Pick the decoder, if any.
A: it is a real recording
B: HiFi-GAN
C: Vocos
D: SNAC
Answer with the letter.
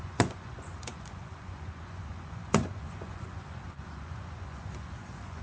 C